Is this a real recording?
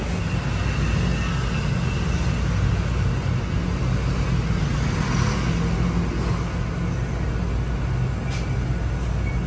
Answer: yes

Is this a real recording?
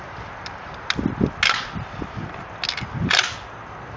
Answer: yes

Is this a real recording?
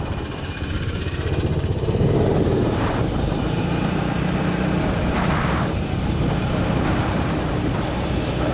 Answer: no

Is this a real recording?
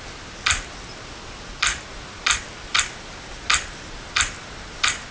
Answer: yes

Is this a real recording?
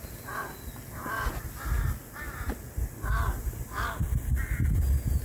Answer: yes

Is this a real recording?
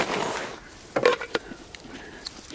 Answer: yes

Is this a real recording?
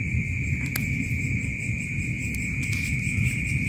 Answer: yes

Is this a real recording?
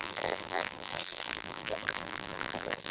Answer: no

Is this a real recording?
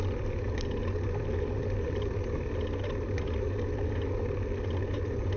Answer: yes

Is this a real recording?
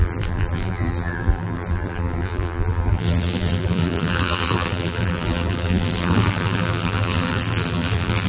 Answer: no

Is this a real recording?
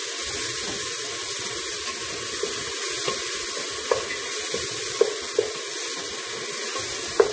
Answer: yes